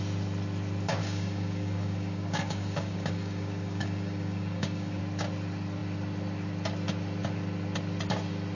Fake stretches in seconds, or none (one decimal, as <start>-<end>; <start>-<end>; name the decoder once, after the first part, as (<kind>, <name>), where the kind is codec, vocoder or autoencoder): 1.0-5.0 (codec, DAC)